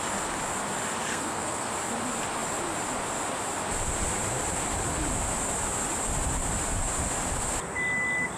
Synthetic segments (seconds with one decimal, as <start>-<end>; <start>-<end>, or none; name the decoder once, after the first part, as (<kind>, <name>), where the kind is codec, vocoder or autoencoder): 1.1-1.7 (codec, SNAC)